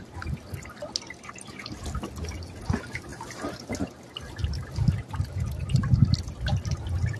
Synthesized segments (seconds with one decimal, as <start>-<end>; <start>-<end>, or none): none